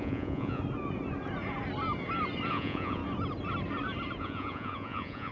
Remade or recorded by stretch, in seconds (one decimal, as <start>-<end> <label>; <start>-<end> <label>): 0.0-0.6 remade; 0.6-2.5 recorded; 2.5-3.0 remade; 3.0-4.2 recorded; 4.2-5.3 remade